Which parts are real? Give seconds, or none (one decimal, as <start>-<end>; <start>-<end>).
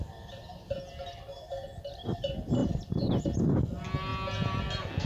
0.0-5.1